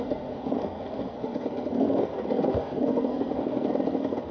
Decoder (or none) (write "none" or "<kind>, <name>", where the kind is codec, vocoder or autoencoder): codec, SNAC